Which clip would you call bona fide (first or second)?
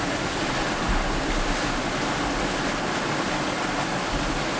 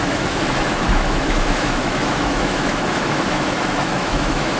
first